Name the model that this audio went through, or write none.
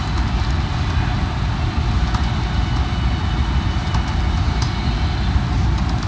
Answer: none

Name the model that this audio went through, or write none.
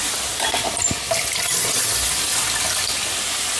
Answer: none